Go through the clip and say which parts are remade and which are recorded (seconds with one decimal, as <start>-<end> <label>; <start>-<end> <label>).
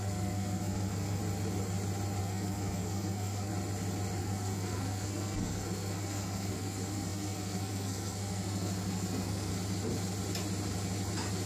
0.0-1.2 remade; 1.2-2.2 recorded; 2.2-3.5 remade; 3.5-4.2 recorded; 4.2-9.5 remade; 9.5-11.5 recorded